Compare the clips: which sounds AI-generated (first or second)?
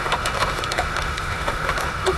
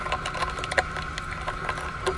first